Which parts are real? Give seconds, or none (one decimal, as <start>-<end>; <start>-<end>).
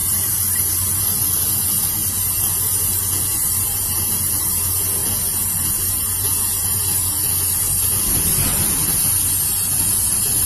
0.0-3.5; 4.6-10.5